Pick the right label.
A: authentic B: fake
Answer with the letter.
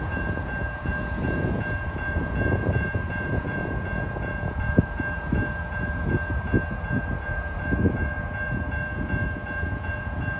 B